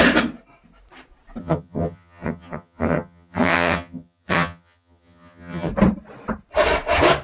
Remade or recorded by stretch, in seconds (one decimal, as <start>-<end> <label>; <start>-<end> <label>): 0.0-1.4 recorded; 1.4-5.7 remade; 5.7-7.2 recorded